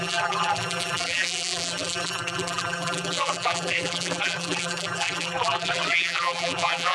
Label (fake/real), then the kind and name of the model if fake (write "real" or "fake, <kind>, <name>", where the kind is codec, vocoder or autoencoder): fake, vocoder, BigVGAN v2